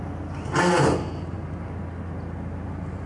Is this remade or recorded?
recorded